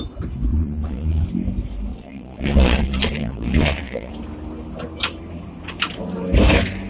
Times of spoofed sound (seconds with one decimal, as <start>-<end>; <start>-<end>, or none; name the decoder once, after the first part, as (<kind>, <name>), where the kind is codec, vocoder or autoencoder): 0.5-1.2 (vocoder, Vocos); 1.9-4.1